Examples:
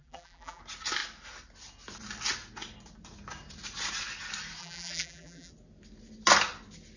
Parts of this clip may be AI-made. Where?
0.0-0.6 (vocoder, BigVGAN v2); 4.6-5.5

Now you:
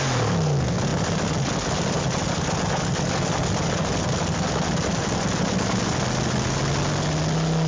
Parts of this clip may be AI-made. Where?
none

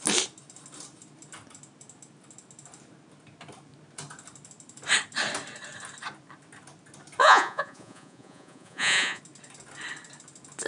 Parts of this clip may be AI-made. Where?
7.2-9.2 (vocoder, Vocos)

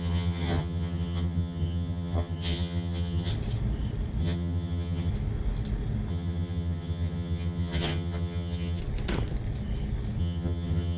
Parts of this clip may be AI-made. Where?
0.0-3.3 (vocoder, HiFi-GAN); 4.2-5.1; 6.1-8.8; 10.2-11.0

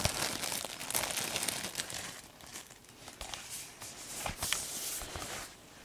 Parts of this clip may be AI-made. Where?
none